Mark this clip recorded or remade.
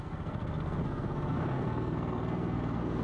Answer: remade